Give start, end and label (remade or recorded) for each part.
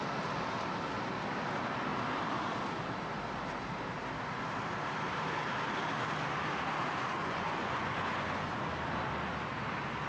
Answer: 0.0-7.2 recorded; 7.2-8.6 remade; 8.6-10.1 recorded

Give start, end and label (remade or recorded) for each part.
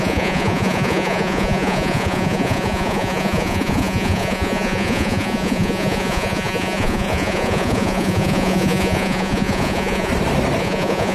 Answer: 0.0-10.1 remade; 10.1-10.6 recorded; 10.6-11.1 remade